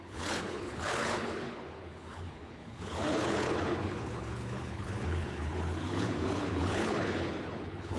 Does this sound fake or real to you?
fake